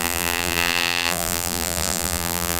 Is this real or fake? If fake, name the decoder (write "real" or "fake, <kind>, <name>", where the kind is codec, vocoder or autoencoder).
fake, vocoder, BigVGAN v2